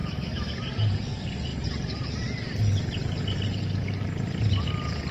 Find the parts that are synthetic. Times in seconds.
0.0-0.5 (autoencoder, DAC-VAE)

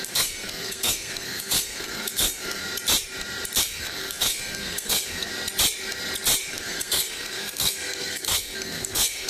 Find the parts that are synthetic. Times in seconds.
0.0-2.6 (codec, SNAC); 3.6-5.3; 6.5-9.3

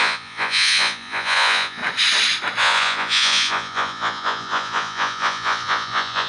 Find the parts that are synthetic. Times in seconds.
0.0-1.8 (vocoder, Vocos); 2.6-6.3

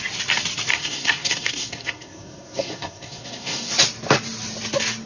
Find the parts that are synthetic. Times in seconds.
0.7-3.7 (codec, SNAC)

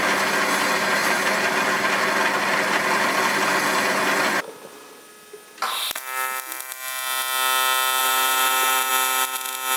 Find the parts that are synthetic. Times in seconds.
1.0-1.5 (vocoder, BigVGAN v2); 8.0-8.9